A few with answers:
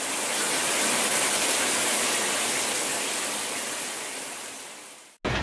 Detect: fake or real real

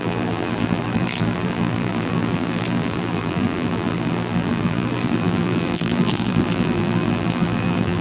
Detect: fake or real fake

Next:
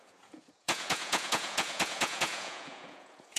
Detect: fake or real fake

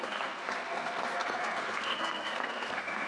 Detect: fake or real fake